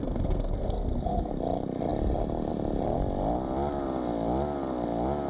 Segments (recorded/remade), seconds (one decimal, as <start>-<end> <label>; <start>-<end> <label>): 0.0-1.3 remade; 1.3-5.3 recorded